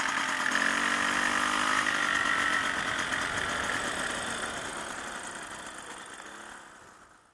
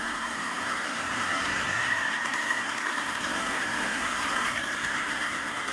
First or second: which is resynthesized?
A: second